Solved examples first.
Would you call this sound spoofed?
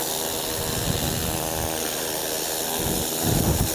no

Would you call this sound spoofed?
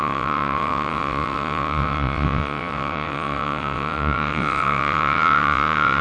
yes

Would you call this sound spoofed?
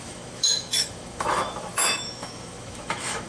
yes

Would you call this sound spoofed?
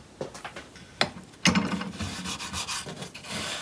no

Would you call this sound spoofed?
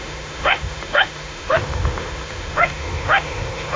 yes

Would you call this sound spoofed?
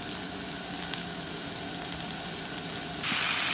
no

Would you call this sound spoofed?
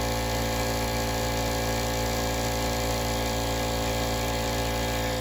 no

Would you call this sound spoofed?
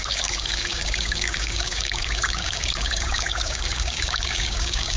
yes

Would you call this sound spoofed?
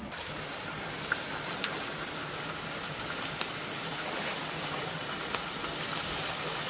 no